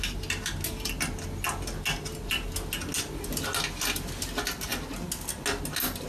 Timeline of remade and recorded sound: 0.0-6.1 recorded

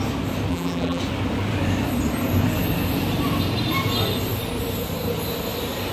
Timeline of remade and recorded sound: 0.0-0.5 recorded; 0.5-1.0 remade; 1.0-5.9 recorded

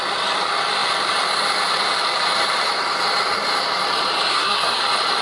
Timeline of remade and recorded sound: 0.0-4.3 recorded; 4.3-4.8 remade; 4.8-5.2 recorded

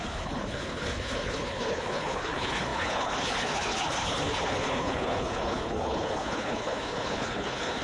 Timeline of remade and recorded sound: 0.0-7.8 remade